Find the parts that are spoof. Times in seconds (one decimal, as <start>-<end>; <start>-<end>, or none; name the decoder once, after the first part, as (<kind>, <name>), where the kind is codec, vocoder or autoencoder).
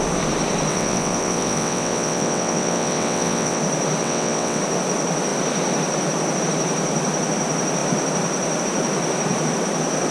0.7-3.6 (vocoder, WaveNeXt); 4.0-4.6